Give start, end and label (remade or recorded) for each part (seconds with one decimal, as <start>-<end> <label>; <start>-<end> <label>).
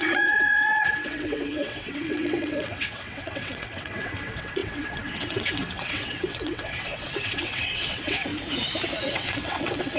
0.0-8.3 remade; 8.3-9.0 recorded; 9.0-10.0 remade